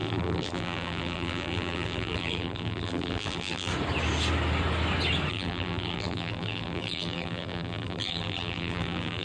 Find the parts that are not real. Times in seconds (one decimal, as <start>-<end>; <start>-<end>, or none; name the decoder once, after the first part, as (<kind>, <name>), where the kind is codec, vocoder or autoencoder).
0.0-3.7 (vocoder, BigVGAN v2); 5.3-9.2